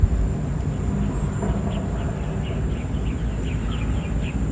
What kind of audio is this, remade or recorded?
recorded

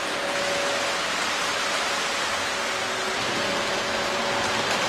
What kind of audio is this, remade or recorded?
recorded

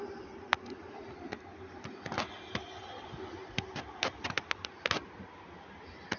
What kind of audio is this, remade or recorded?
recorded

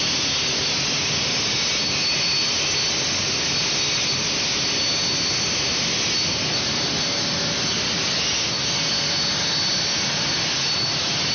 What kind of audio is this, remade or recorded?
recorded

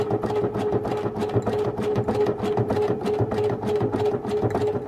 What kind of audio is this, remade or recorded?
recorded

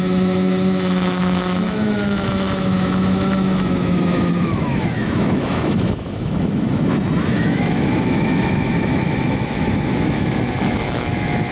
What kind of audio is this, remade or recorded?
remade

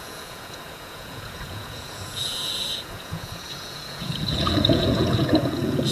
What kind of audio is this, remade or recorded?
remade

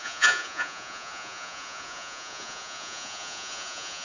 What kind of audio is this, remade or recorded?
remade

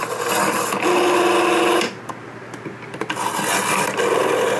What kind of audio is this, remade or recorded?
recorded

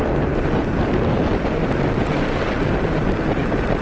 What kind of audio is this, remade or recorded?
recorded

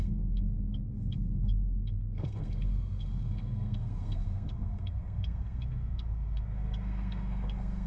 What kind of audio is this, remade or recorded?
remade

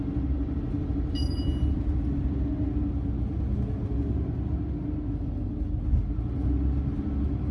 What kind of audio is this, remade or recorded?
recorded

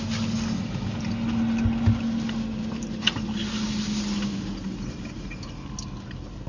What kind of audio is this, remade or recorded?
recorded